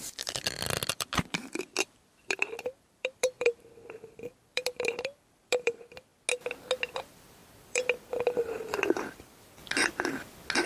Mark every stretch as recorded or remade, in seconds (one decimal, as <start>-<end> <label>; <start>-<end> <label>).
0.0-6.1 remade; 6.1-6.9 recorded; 6.9-9.6 remade; 9.6-10.7 recorded